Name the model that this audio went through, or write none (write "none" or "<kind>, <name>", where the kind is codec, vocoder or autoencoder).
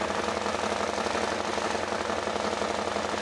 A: none